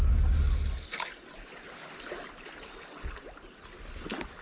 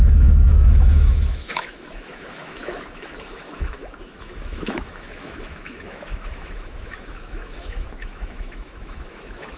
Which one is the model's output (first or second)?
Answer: second